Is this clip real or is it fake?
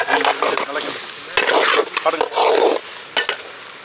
real